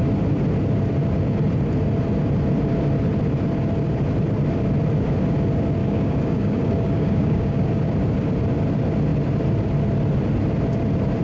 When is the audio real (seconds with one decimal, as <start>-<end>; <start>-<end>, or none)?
0.0-5.8; 7.7-11.2